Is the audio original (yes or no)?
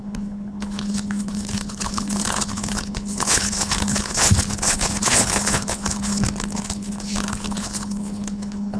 no